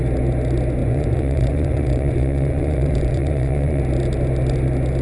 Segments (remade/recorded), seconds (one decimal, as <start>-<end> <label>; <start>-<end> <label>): 0.0-0.8 recorded; 0.8-3.8 remade; 3.8-5.0 recorded